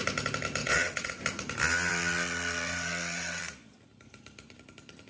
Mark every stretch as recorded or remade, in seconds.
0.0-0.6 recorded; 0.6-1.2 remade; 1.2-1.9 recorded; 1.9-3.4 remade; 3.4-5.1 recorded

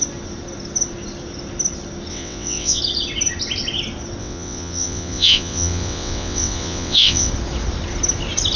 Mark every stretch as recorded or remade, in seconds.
0.0-2.1 recorded; 2.1-2.8 remade; 2.8-4.2 recorded; 4.2-7.3 remade; 7.3-8.6 recorded

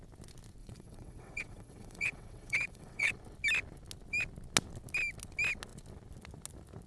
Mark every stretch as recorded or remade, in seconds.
0.0-0.6 recorded; 0.6-3.1 remade; 3.1-6.9 recorded

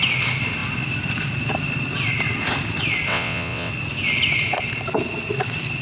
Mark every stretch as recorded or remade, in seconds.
0.0-3.1 recorded; 3.1-3.7 remade; 3.7-5.8 recorded

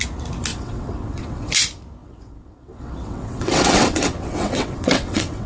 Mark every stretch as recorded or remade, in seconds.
0.0-0.5 recorded; 0.5-1.5 remade; 1.5-2.0 recorded; 2.0-5.5 remade